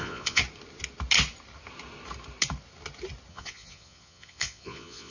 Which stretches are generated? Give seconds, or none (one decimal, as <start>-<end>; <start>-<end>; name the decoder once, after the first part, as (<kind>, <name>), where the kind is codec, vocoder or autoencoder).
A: 0.0-0.4 (vocoder, Vocos); 3.3-5.1